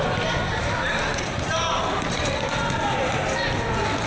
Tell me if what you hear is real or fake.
real